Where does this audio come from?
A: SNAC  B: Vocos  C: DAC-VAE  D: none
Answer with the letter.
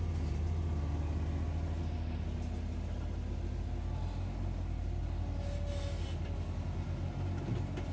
D